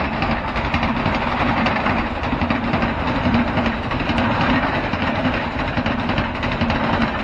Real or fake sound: real